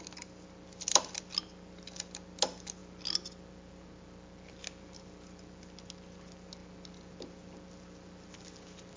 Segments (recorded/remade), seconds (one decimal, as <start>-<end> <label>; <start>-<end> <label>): 0.0-9.0 recorded